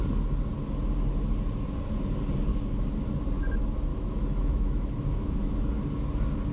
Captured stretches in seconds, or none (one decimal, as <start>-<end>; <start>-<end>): 0.0-2.5; 3.1-3.9; 5.8-6.5